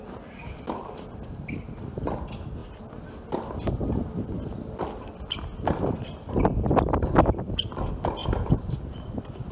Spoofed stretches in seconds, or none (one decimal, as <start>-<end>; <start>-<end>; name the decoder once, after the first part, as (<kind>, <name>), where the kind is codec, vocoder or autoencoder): none